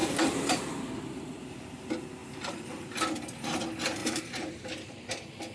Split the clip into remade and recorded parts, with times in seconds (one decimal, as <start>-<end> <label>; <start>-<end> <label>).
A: 0.0-1.0 remade; 1.0-2.2 recorded; 2.2-3.0 remade; 3.0-4.0 recorded; 4.0-5.1 remade; 5.1-5.5 recorded